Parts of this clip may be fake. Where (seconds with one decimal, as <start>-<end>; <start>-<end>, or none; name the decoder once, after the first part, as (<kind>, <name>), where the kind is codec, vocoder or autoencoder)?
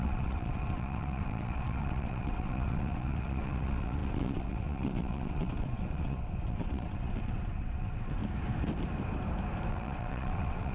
0.0-8.2 (vocoder, WaveNeXt); 9.7-10.7